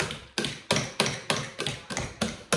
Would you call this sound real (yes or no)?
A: yes